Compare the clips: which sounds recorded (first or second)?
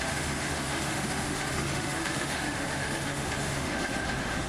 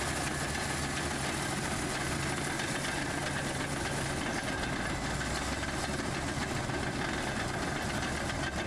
second